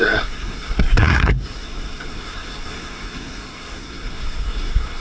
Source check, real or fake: fake